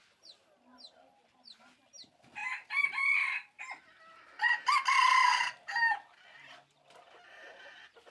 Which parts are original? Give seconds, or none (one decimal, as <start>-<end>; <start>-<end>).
0.0-8.1